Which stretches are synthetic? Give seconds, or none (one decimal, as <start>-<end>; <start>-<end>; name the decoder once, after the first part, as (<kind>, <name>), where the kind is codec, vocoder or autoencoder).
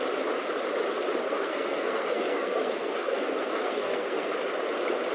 1.2-4.3 (codec, SNAC)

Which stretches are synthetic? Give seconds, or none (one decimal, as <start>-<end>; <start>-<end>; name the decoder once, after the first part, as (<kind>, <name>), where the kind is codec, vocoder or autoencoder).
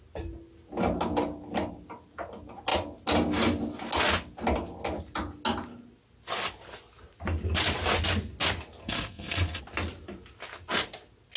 8.8-9.6 (codec, SNAC)